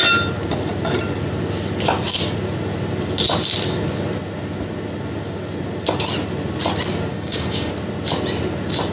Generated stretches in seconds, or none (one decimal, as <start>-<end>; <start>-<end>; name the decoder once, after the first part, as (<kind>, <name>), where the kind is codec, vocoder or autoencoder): 7.1-7.7 (codec, DAC)